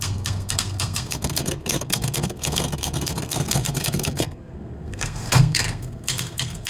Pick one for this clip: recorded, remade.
remade